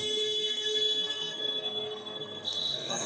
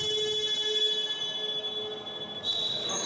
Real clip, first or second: second